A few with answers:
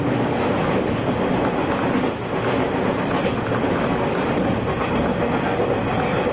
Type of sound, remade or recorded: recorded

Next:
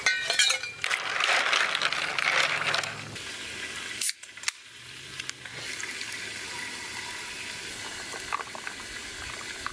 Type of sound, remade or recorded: recorded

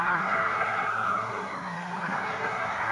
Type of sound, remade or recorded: remade